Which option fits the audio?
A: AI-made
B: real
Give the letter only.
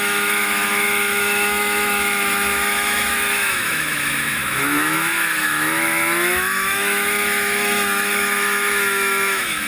A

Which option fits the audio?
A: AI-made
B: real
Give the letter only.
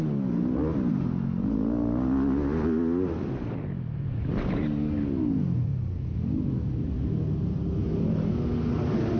B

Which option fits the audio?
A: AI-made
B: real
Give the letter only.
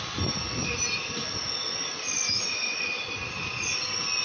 B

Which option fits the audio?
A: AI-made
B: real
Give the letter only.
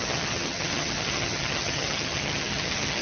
A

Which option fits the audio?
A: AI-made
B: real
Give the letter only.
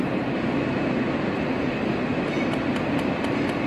B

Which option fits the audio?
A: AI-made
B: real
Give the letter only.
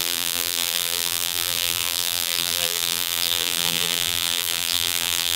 A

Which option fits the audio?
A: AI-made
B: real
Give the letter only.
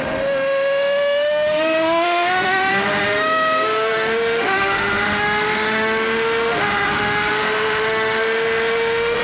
A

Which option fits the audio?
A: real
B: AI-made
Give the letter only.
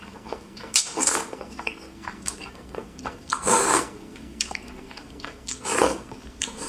B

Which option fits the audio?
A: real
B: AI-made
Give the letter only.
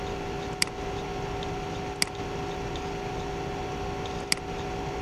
A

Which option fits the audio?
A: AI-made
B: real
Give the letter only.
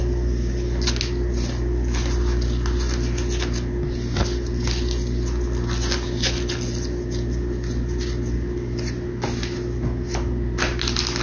B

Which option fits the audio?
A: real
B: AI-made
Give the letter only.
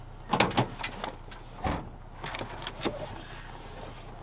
A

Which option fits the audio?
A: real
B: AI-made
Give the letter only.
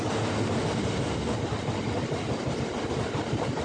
A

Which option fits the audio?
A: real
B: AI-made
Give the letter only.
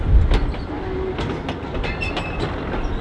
A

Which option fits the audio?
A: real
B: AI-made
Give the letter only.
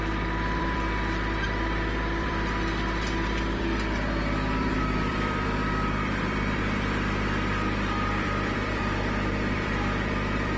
B